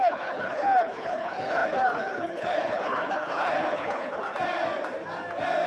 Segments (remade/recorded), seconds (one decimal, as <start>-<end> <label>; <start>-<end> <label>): 0.0-4.2 remade; 4.2-5.7 recorded